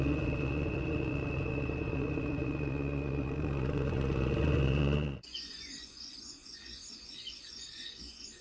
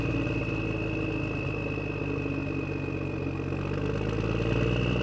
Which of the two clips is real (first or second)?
second